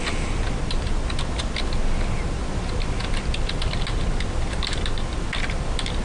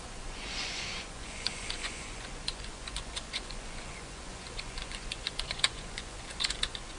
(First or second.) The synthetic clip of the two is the second